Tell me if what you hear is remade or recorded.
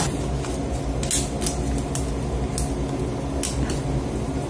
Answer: recorded